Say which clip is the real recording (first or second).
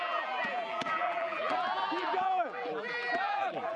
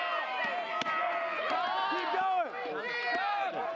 second